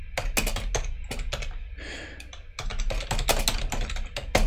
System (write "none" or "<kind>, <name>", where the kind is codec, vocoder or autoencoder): none